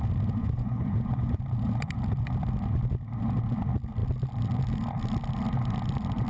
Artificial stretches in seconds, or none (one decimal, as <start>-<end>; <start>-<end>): 0.4-1.4